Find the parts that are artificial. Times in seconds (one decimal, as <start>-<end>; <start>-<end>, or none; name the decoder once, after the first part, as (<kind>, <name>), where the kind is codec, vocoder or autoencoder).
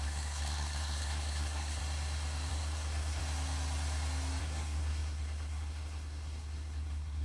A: 0.0-1.8 (codec, SNAC); 2.5-3.2; 4.4-7.2